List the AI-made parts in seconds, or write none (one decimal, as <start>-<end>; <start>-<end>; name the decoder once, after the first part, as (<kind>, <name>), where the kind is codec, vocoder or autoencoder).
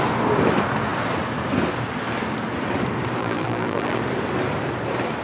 3.2-4.0 (vocoder, BigVGAN v2)